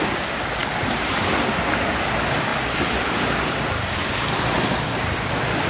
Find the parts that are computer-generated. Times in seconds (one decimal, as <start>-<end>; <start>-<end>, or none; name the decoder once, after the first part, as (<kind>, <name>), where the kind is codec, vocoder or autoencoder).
2.5-5.7 (vocoder, BigVGAN v2)